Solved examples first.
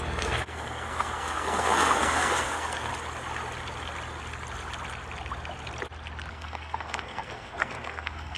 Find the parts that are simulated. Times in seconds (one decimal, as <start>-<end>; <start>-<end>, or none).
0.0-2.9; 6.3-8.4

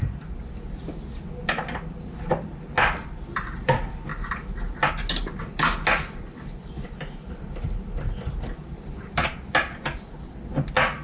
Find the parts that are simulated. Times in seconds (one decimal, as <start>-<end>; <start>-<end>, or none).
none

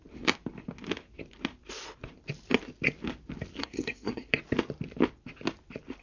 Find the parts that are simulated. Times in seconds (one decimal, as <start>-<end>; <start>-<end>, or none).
3.6-4.3

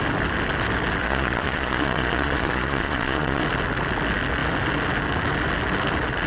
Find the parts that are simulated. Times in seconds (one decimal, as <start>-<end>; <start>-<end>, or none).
1.0-3.4

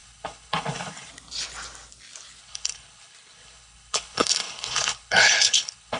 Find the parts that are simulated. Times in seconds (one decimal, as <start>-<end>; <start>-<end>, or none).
0.0-1.1; 2.4-6.0

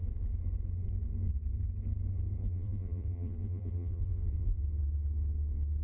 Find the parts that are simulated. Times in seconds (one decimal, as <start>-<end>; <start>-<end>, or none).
2.4-4.6